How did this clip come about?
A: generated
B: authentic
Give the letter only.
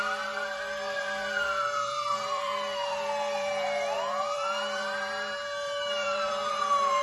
A